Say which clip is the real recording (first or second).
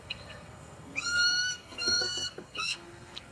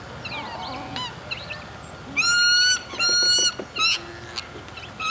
second